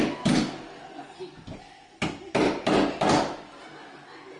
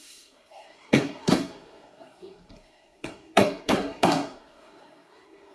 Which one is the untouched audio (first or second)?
first